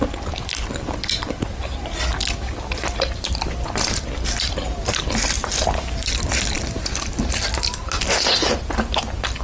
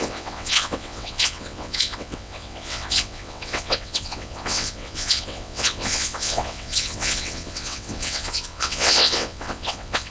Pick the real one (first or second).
first